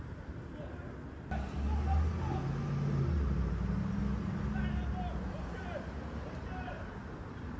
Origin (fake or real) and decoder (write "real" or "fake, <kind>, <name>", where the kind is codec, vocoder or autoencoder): real